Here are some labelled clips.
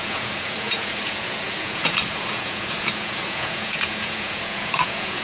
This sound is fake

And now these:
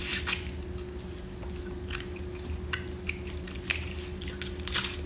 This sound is real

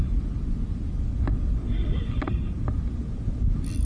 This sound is real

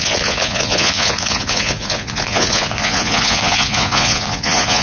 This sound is fake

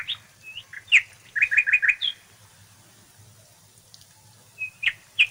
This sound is real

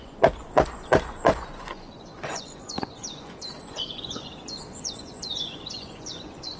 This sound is fake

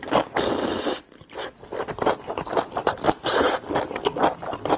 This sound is real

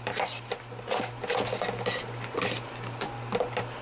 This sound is real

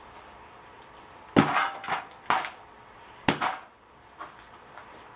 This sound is real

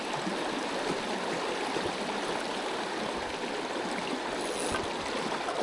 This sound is real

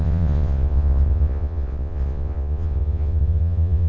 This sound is fake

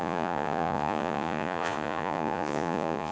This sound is fake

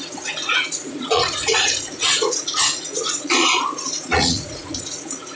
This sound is fake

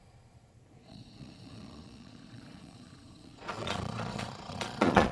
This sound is fake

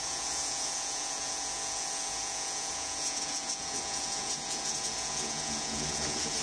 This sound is fake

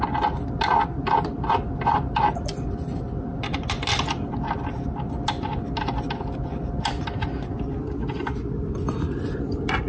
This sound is real